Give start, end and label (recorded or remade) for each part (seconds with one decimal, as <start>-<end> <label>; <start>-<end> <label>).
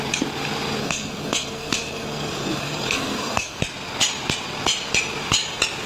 0.0-0.8 recorded; 0.8-3.6 remade; 3.6-5.9 recorded